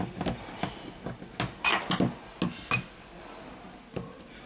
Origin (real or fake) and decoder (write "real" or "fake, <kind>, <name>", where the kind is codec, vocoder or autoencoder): real